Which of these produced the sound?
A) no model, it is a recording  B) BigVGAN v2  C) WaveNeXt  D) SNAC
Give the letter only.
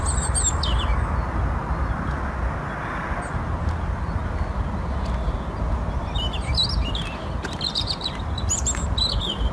A